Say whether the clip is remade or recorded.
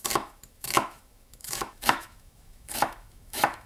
remade